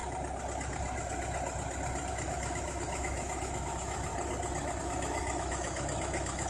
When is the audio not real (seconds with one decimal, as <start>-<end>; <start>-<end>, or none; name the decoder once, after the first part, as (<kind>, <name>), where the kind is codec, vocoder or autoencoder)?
2.1-4.1 (autoencoder, DAC-VAE); 4.8-6.5